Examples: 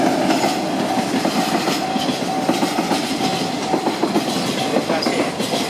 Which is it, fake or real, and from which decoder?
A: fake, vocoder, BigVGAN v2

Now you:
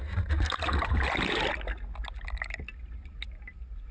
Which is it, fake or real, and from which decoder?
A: real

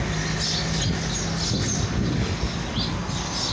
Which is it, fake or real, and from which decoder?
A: real